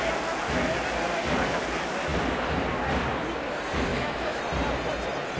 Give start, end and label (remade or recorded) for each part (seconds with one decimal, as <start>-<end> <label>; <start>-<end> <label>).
0.0-3.9 recorded; 3.9-4.4 remade; 4.4-5.4 recorded